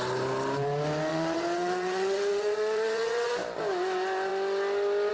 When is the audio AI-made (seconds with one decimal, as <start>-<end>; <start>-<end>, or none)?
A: 1.1-3.3